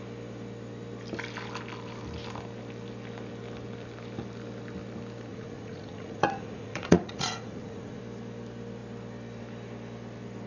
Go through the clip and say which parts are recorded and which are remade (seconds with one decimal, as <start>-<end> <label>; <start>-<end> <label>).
0.0-5.3 recorded; 5.3-8.0 remade; 8.0-10.5 recorded